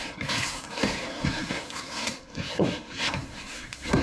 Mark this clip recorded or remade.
remade